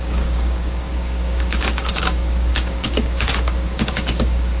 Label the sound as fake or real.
fake